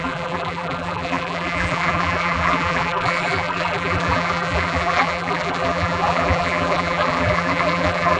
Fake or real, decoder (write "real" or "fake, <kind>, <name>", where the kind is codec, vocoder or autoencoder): fake, vocoder, BigVGAN v2